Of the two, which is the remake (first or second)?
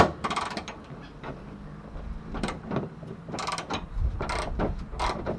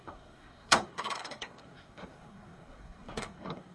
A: second